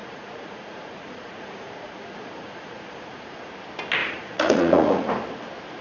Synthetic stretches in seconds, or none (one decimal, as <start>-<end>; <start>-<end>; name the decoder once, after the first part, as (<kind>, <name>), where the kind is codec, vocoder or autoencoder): 0.0-3.5 (vocoder, Vocos); 4.0-5.1